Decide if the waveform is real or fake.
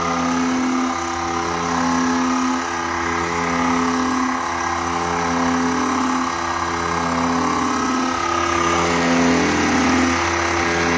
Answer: real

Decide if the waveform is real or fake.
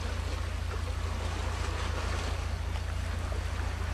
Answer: real